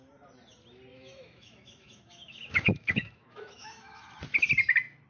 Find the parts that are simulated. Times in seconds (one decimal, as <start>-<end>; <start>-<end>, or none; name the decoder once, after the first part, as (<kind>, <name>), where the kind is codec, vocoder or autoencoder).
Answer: 0.9-4.0 (autoencoder, DAC-VAE)